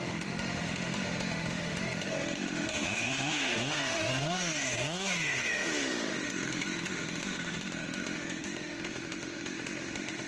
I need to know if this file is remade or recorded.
remade